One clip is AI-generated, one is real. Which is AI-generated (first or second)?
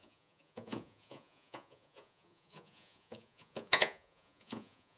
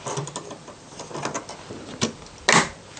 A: first